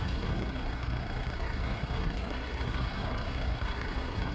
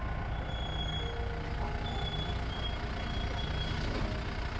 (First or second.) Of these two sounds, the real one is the second